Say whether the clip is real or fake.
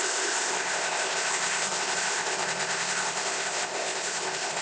fake